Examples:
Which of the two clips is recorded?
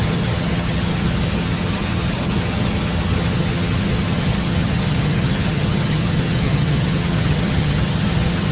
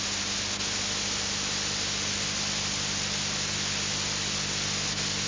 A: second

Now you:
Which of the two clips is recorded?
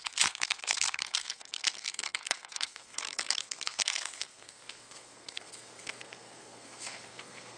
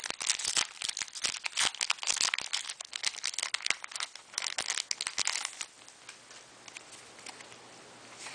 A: second